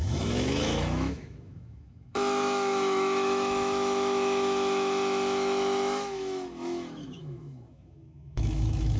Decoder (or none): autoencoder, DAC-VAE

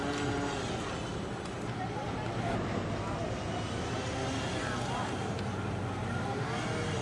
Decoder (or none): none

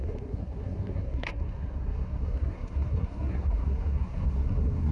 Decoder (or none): codec, SNAC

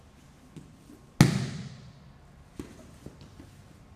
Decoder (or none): none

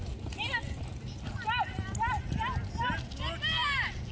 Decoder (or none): none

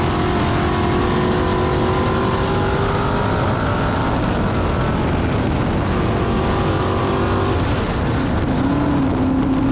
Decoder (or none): none